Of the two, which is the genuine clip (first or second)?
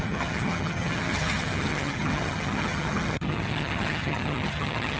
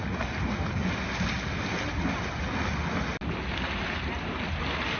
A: second